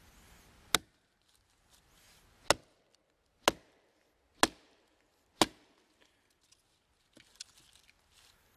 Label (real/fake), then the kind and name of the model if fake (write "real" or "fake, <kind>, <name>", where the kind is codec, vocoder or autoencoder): real